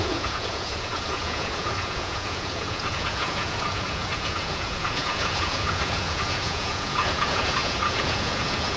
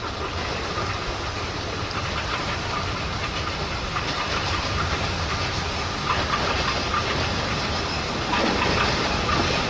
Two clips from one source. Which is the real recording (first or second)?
second